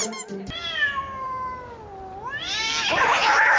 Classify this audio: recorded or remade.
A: recorded